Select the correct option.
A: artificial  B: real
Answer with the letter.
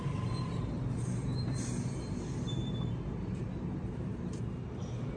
A